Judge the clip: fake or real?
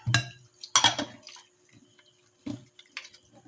real